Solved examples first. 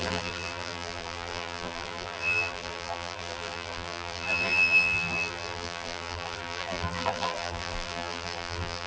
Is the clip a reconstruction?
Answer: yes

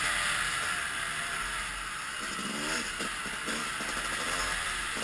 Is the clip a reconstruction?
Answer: no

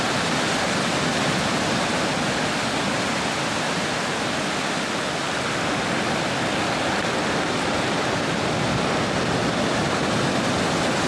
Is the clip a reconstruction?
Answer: no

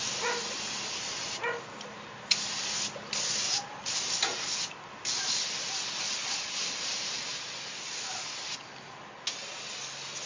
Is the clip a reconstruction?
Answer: no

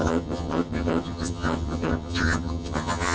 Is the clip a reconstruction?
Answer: yes